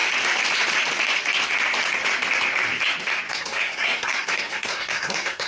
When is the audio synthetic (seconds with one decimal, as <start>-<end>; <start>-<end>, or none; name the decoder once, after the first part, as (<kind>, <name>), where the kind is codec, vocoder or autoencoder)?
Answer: 3.3-5.5 (codec, SNAC)